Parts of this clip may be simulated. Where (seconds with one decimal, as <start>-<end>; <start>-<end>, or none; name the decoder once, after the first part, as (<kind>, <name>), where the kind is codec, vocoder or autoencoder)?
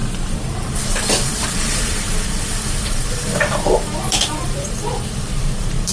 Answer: 0.0-5.9 (vocoder, BigVGAN v2)